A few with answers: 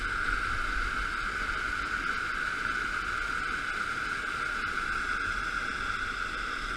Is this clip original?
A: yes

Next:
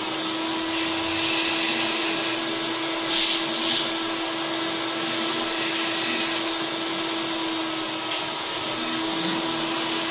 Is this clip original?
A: yes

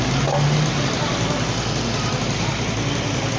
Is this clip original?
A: yes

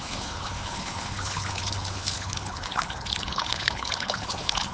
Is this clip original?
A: no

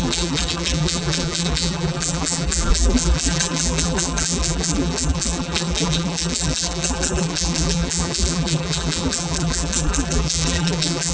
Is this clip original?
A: no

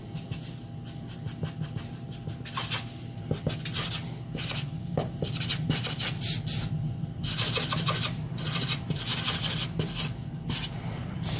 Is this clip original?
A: yes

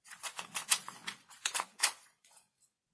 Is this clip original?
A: no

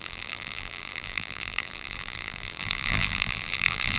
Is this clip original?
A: no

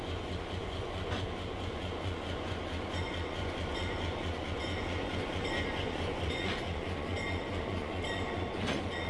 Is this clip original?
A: no